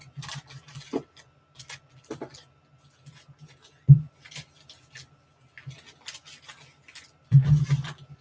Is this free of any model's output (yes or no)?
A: yes